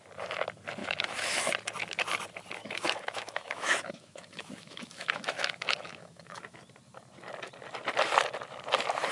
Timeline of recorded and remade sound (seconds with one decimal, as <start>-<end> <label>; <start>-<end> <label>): 0.0-0.8 recorded; 0.8-1.5 remade; 1.5-2.6 recorded; 2.6-6.6 remade; 6.6-9.1 recorded